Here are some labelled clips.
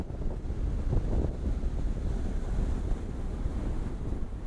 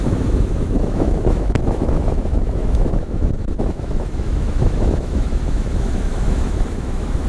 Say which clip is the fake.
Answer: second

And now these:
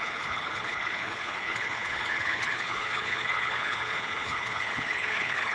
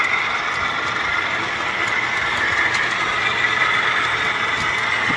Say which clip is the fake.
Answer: first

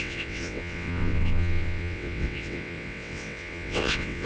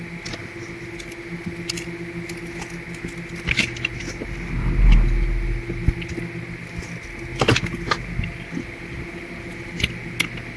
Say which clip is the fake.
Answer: first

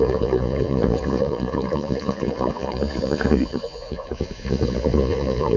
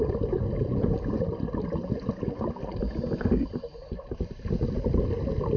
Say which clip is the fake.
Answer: first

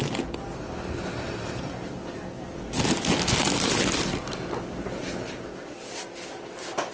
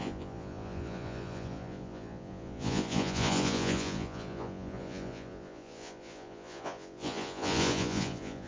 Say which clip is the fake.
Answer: second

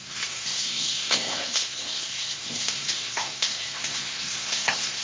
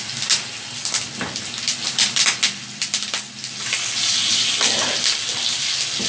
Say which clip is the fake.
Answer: first